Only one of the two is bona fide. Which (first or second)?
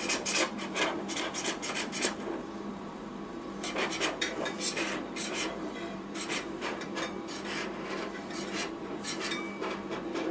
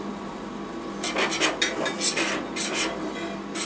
second